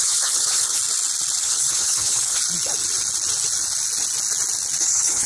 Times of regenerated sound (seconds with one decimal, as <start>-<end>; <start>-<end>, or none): 0.0-0.8; 1.4-2.4; 4.8-5.3